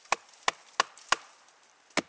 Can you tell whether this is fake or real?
real